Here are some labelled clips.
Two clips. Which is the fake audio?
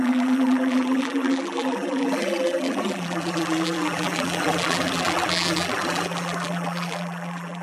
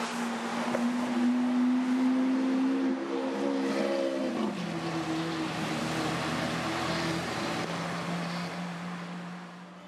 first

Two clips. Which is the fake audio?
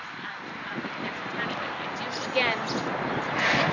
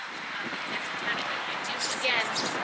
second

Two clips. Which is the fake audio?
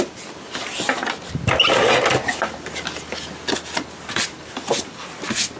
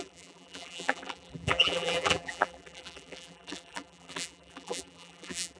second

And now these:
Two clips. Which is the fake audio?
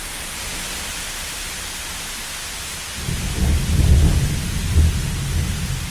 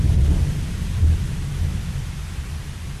second